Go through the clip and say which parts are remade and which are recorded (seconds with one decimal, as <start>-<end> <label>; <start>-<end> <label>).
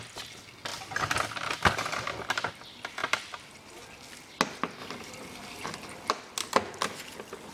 0.0-4.8 recorded; 4.8-6.1 remade; 6.1-7.5 recorded